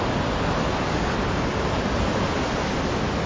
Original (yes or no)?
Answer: yes